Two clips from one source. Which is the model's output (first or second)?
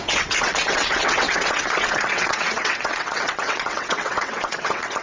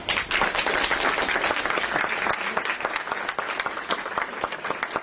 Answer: first